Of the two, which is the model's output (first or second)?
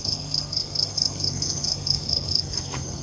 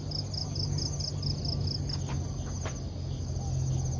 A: first